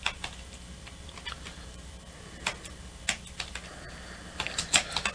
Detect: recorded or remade recorded